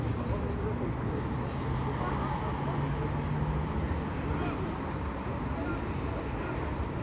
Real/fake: real